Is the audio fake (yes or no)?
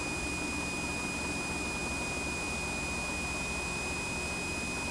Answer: no